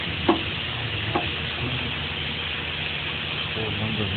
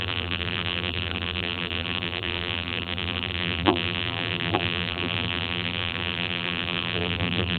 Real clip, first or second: first